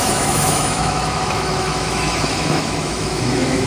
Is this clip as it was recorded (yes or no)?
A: no